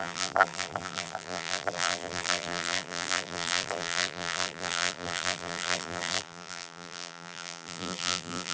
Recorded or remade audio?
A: remade